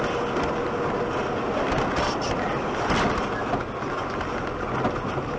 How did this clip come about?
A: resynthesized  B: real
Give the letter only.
B